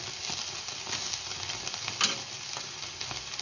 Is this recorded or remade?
recorded